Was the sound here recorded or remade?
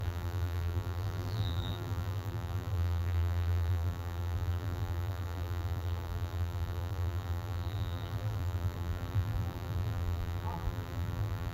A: remade